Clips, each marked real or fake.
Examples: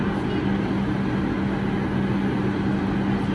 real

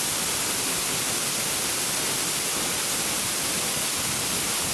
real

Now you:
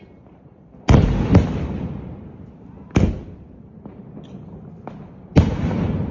real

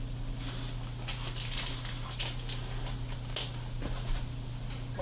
real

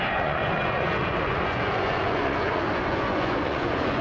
fake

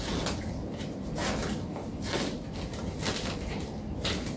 real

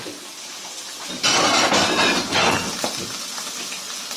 real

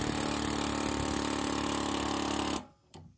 real